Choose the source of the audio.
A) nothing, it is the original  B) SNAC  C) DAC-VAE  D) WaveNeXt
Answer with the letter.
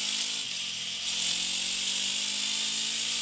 A